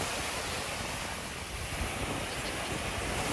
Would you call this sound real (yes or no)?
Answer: yes